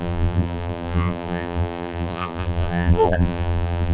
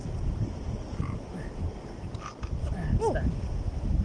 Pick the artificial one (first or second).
first